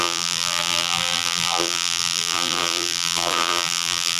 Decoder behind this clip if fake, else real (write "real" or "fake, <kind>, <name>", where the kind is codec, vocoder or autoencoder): fake, vocoder, BigVGAN v2